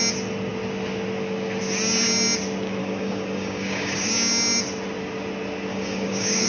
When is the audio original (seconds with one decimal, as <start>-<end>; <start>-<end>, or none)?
0.0-2.8; 4.1-5.7